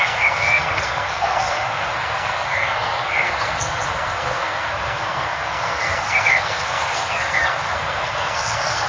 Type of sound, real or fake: fake